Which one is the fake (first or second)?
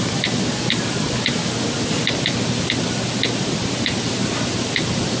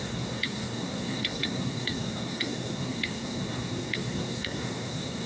second